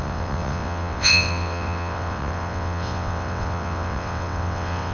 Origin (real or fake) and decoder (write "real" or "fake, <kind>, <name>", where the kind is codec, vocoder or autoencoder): fake, vocoder, WaveNeXt